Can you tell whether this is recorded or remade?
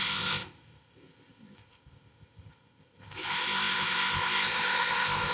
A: remade